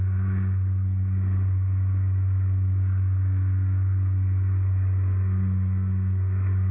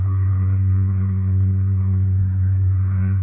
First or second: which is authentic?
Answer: first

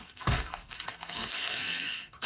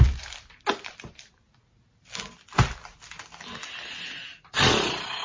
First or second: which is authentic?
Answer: second